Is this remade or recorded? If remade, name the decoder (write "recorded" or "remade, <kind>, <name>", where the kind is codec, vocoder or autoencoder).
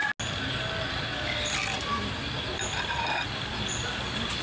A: recorded